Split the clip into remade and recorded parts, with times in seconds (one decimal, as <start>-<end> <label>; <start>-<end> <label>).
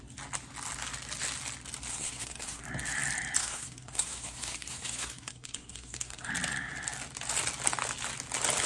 0.0-1.9 recorded; 1.9-2.6 remade; 2.6-3.4 recorded; 3.4-6.3 remade; 6.3-8.7 recorded